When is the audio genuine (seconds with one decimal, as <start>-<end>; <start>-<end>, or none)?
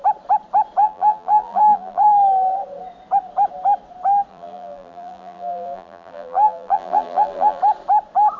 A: 0.0-0.8; 2.1-4.3; 7.6-8.4